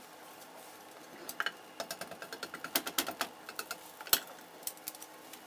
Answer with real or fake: real